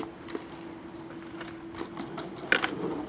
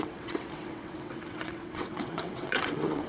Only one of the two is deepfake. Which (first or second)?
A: second